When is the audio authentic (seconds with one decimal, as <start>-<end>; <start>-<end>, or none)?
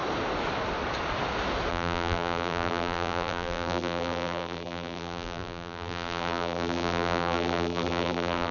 0.0-1.7